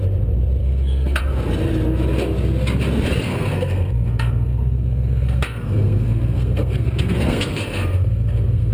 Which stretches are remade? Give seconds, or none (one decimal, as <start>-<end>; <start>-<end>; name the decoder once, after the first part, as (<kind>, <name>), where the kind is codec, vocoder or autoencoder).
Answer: 0.6-1.2 (codec, SNAC); 3.3-8.7